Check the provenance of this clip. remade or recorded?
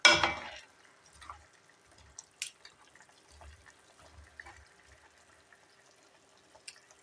recorded